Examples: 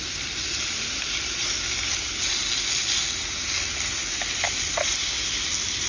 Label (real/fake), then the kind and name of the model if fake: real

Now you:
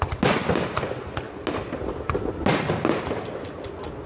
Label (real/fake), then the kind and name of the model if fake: real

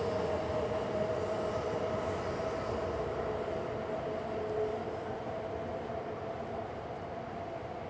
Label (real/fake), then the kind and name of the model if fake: real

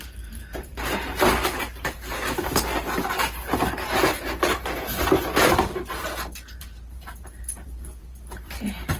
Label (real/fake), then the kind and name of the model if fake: fake, vocoder, BigVGAN v2